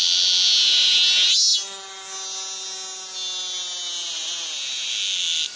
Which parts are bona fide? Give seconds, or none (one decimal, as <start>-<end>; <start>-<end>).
0.0-5.6